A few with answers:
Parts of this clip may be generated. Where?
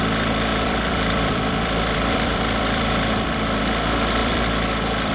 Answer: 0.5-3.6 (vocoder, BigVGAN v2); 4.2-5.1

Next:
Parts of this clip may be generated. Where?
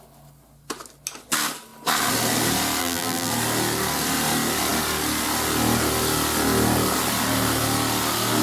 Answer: 2.8-3.3 (vocoder, BigVGAN v2)